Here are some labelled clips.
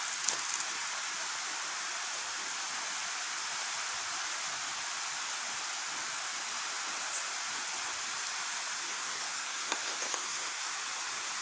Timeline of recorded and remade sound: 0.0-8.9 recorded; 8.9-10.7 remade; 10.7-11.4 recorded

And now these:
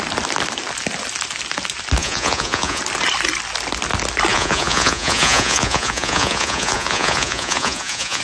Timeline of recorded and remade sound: 0.0-2.0 recorded; 2.0-2.8 remade; 2.8-4.3 recorded; 4.3-8.2 remade

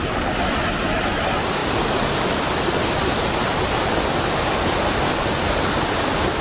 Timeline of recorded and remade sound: 0.0-6.4 recorded

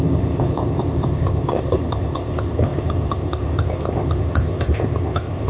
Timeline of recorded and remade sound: 0.0-5.5 remade